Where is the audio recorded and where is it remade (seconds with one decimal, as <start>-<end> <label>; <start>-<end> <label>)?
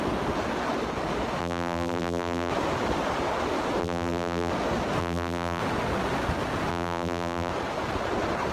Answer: 0.0-1.4 recorded; 1.4-2.5 remade; 2.5-3.8 recorded; 3.8-4.5 remade; 4.5-5.0 recorded; 5.0-5.6 remade; 5.6-6.7 recorded; 6.7-7.5 remade; 7.5-8.5 recorded